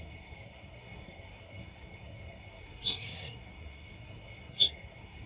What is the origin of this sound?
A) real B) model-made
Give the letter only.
B